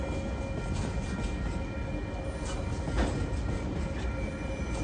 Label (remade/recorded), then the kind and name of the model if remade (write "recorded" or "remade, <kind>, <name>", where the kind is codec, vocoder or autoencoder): recorded